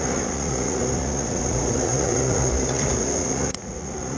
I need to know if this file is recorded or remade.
remade